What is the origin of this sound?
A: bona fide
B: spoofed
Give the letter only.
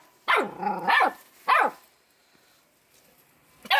A